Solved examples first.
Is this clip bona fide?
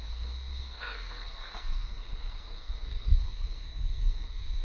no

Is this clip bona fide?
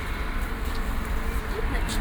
no